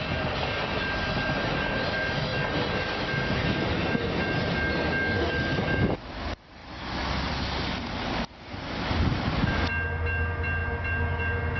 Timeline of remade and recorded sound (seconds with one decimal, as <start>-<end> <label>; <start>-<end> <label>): 0.0-11.6 recorded